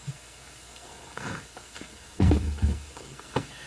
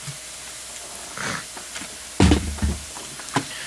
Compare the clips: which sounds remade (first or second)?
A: first